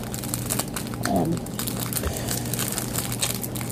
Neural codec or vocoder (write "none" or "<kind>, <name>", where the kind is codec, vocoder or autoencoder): none